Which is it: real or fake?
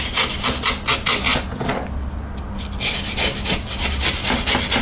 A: real